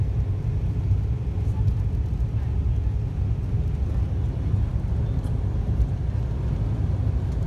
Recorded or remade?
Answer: recorded